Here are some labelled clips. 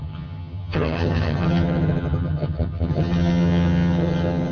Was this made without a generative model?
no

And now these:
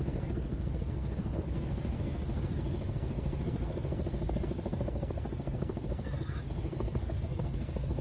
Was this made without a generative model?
no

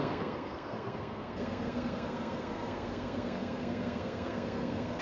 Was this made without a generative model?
no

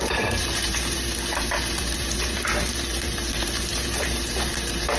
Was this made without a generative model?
no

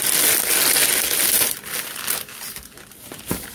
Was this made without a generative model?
yes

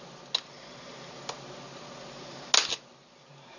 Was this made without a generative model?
yes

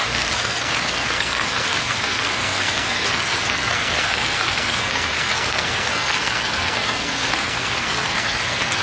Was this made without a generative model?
no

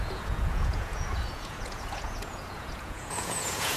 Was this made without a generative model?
no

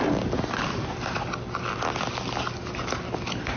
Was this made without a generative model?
yes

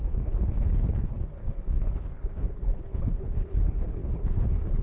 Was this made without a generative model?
no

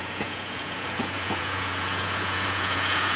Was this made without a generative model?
no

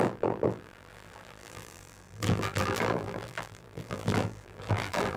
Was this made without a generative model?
no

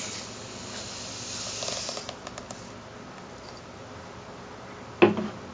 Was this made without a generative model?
yes